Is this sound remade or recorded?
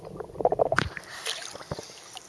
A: remade